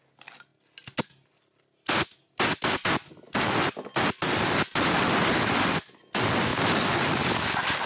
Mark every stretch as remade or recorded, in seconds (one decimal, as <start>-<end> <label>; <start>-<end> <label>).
0.0-7.9 recorded